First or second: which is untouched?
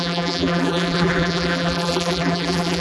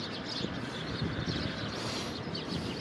second